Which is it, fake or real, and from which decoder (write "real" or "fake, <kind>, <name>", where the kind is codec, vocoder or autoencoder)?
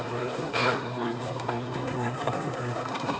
fake, codec, SNAC